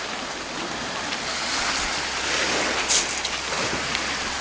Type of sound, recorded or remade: recorded